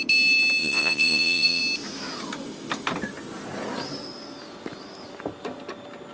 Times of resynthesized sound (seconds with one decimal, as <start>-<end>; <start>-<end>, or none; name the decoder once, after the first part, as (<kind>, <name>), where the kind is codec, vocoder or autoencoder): 0.6-1.6 (vocoder, Vocos)